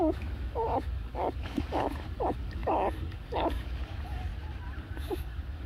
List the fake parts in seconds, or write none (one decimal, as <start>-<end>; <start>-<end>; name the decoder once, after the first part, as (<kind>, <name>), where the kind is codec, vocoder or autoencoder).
0.0-4.3 (codec, DAC); 4.8-5.7